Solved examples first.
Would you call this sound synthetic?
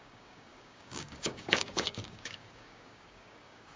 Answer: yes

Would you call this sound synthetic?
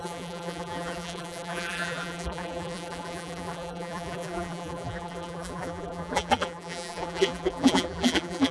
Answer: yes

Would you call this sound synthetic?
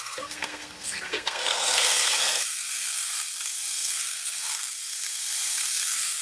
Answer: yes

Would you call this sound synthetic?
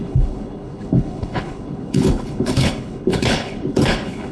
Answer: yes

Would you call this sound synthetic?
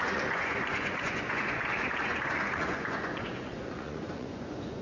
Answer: yes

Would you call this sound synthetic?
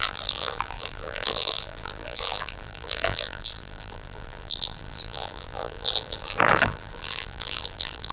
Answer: yes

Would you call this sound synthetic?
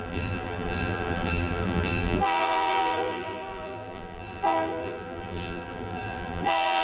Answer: yes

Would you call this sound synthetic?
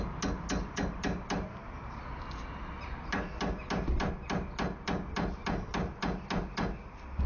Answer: no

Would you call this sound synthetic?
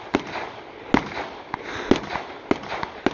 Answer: no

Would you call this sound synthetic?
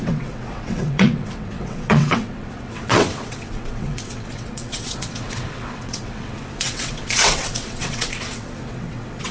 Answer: yes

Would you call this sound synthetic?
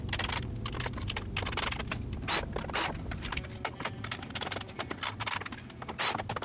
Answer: no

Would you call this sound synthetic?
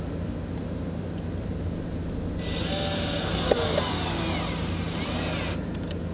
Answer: no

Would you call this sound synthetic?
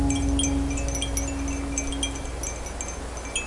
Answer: no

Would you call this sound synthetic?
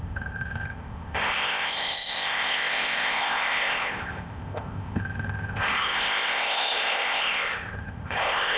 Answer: yes